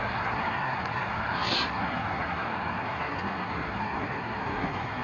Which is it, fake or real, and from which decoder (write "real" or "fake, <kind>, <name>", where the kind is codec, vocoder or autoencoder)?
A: fake, codec, SNAC